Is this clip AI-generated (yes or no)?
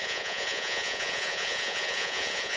yes